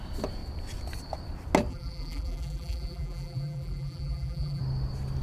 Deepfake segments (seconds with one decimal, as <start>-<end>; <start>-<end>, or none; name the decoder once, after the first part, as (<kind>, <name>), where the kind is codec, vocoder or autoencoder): 1.7-4.6 (vocoder, BigVGAN v2)